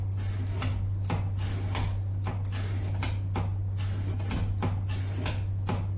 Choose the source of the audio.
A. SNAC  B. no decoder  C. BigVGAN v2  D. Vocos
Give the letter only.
B